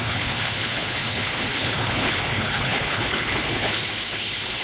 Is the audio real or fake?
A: fake